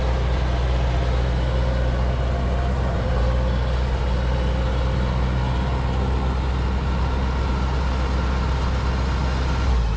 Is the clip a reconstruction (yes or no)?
no